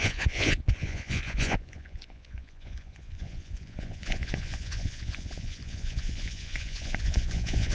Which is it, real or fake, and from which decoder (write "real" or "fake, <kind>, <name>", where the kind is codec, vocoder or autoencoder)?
fake, vocoder, Vocos